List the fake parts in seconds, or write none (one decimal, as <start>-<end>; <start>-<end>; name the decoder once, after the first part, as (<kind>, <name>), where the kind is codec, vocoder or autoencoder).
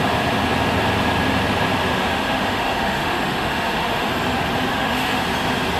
1.9-4.1 (autoencoder, DAC-VAE); 4.7-5.2